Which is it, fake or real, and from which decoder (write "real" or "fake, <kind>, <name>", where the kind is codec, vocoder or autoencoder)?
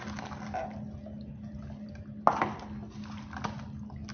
real